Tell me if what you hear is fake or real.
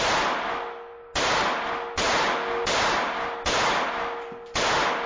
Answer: real